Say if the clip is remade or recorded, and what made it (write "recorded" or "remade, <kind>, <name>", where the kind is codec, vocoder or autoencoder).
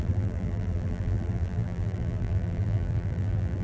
remade, vocoder, BigVGAN v2